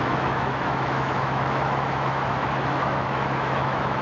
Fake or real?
fake